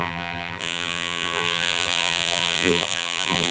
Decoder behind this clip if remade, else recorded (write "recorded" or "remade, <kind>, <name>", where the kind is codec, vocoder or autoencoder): remade, vocoder, BigVGAN v2